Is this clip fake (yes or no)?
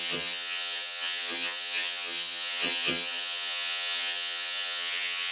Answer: yes